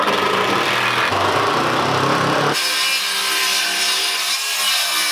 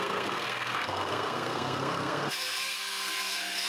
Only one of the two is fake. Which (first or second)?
second